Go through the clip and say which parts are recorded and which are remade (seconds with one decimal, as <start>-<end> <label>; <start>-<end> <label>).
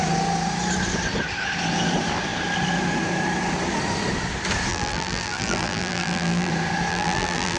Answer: 0.0-4.7 recorded; 4.7-6.5 remade; 6.5-6.9 recorded; 6.9-7.6 remade